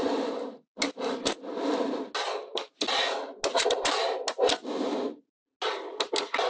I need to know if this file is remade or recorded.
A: recorded